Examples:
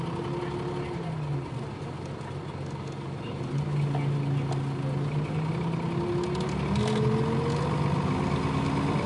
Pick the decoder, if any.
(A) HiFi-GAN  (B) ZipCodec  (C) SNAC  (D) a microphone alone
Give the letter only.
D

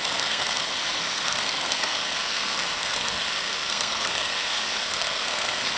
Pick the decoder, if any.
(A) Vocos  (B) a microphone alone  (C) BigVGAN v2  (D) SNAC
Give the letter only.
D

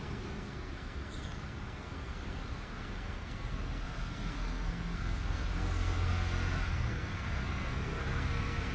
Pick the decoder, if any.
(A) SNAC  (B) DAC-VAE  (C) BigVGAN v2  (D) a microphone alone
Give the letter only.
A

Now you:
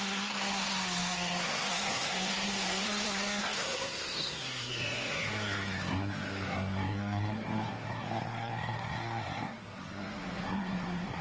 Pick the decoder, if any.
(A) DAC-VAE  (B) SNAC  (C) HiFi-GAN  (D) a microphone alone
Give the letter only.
B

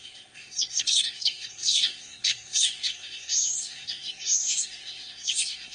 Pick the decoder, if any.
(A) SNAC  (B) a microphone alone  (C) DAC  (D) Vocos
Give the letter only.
A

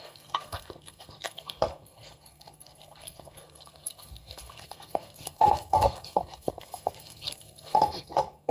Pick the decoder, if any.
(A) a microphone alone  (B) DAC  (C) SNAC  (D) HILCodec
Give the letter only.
C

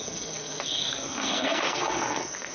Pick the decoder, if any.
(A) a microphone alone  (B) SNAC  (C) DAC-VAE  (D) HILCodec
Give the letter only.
B